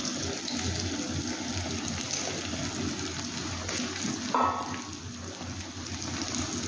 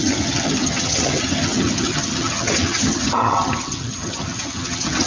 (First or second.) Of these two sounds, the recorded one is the first